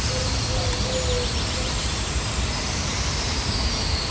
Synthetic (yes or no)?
yes